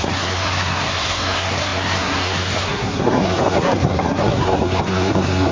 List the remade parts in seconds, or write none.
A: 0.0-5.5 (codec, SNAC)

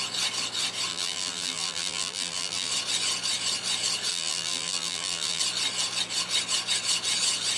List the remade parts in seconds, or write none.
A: 0.9-2.7 (vocoder, BigVGAN v2); 4.1-5.4